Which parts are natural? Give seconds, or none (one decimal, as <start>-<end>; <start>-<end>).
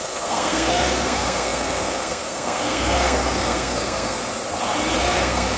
4.3-5.0